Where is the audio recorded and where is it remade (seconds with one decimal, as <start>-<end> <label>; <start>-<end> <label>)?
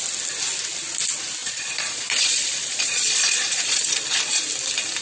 0.0-1.4 recorded; 1.4-4.4 remade; 4.4-5.0 recorded